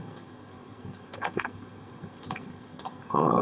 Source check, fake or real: fake